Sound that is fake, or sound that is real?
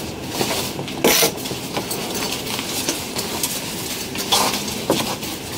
real